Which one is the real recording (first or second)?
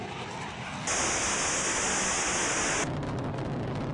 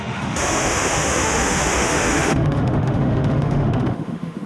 first